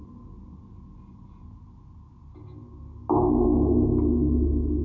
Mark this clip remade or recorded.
recorded